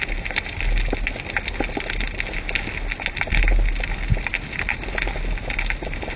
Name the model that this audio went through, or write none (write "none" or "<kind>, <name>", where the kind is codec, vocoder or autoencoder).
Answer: none